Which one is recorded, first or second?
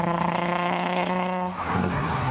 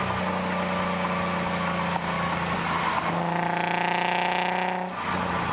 second